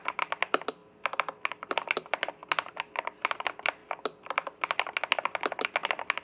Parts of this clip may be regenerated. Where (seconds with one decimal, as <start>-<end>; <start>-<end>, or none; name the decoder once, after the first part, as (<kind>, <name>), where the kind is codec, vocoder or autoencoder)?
none

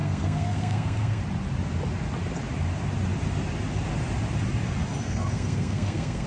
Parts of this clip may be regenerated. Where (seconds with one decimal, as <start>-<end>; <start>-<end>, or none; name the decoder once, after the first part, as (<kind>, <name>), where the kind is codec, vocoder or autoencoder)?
0.0-1.2 (codec, SNAC); 5.0-6.3

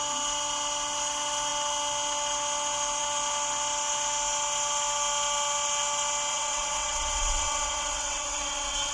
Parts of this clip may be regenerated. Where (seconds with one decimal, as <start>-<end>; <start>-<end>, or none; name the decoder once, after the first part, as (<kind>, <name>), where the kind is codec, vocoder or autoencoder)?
6.3-8.9 (vocoder, WaveNeXt)

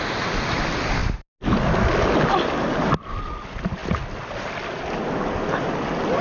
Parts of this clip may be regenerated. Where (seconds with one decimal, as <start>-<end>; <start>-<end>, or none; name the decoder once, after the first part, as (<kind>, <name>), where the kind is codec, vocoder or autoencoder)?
none

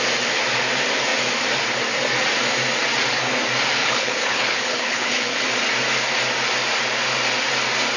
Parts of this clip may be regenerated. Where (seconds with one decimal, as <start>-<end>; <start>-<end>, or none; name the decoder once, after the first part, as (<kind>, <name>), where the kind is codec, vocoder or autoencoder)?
3.8-5.4 (codec, HILCodec)

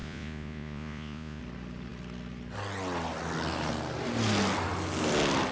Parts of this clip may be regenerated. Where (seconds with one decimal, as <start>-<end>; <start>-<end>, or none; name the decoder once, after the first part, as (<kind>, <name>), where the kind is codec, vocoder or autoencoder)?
0.0-1.4 (vocoder, Vocos)

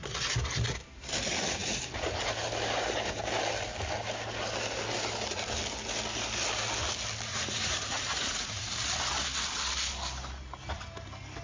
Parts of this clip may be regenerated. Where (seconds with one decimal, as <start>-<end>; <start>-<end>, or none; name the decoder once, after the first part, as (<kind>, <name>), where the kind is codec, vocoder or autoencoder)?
7.3-8.6 (vocoder, Vocos)